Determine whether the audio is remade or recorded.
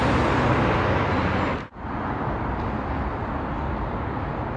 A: recorded